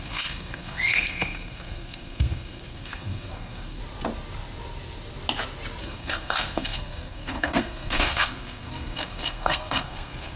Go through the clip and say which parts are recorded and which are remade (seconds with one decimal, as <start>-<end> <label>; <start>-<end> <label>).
0.0-3.8 remade; 3.8-5.8 recorded; 5.8-10.4 remade